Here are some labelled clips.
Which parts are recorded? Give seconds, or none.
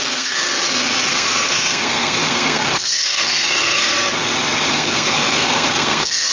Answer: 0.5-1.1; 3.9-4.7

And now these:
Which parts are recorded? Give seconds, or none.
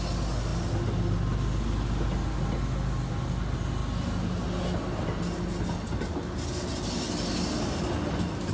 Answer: 0.0-8.5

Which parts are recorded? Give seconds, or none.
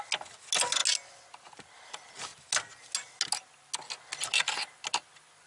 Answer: 0.0-5.5